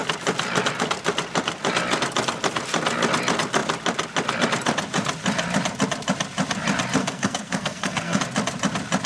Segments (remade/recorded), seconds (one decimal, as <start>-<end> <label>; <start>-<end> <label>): 0.0-7.0 recorded; 7.0-8.2 remade; 8.2-9.1 recorded